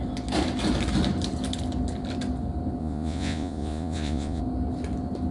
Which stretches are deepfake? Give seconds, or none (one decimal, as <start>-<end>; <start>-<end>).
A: 2.8-4.4